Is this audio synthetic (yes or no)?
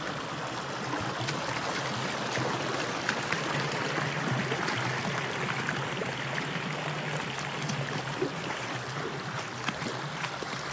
no